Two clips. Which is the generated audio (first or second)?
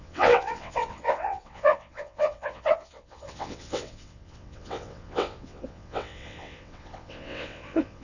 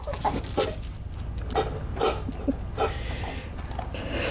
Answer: first